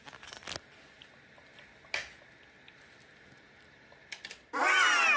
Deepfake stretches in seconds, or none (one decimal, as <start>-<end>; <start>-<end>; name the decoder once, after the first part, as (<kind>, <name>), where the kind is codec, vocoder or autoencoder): none